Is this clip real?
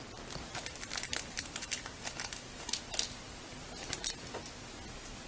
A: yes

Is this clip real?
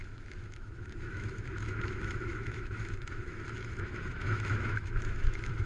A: no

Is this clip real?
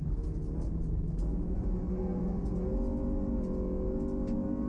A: yes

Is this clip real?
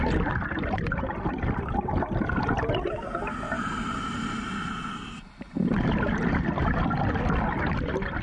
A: yes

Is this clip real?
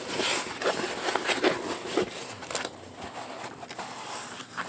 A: yes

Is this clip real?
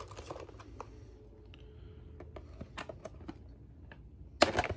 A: yes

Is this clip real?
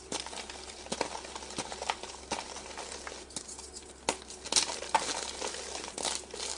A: yes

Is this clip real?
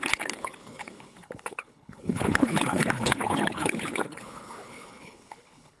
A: no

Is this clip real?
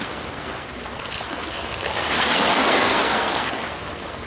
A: no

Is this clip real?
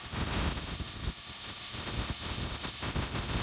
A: yes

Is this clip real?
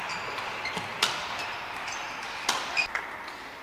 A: yes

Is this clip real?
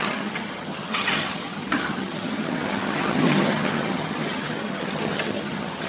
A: no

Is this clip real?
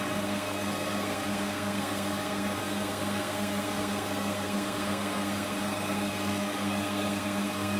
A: no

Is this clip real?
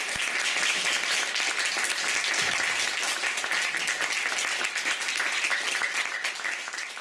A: yes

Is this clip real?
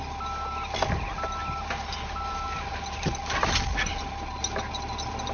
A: yes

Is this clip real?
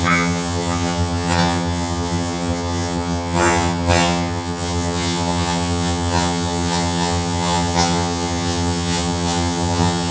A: no